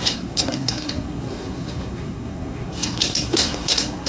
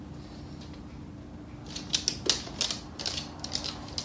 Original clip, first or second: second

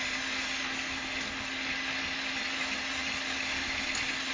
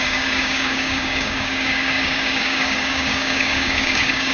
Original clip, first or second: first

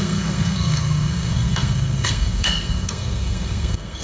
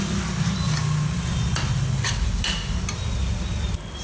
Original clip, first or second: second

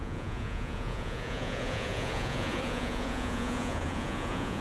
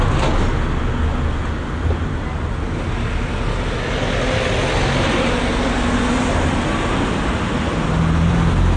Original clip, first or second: second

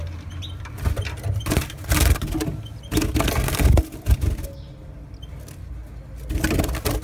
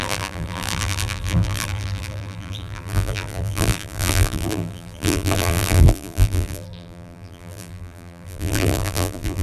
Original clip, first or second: first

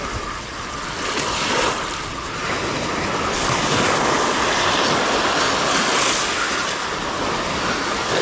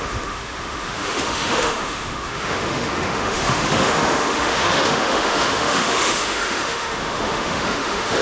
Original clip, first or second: first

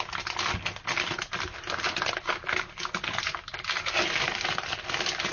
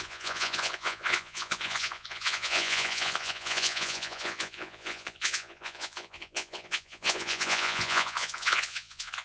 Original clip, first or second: first